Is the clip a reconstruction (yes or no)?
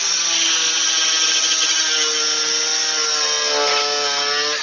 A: no